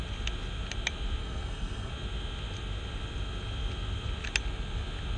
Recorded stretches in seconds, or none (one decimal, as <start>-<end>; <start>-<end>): 0.0-1.2; 1.9-5.2